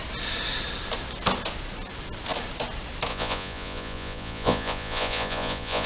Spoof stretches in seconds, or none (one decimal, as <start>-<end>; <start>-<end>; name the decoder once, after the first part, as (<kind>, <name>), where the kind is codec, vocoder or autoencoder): 3.1-5.9 (vocoder, Vocos)